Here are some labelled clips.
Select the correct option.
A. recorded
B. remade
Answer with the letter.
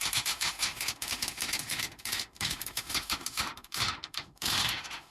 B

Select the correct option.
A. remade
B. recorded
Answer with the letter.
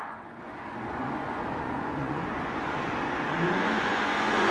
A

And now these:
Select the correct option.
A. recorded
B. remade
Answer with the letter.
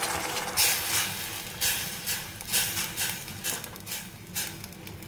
A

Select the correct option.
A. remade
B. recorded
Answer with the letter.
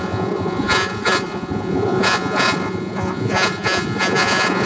A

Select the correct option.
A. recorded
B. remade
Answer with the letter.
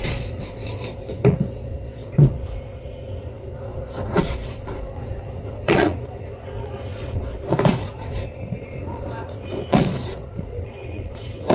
B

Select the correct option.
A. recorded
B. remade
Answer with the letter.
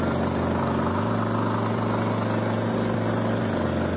A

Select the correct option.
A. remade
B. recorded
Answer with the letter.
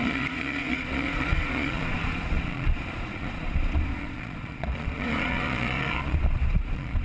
A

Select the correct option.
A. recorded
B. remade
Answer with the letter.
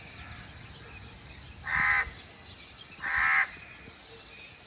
A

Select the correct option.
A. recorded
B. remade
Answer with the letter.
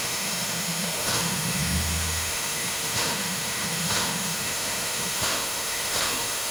B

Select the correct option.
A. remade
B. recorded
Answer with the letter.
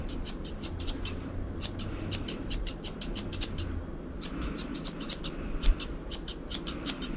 B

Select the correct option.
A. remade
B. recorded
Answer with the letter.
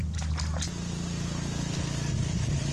B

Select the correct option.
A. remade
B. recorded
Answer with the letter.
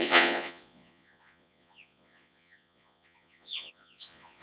A